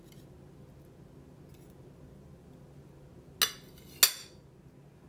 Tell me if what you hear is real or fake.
real